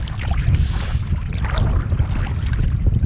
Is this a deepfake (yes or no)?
no